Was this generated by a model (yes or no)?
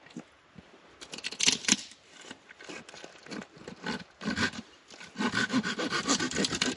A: no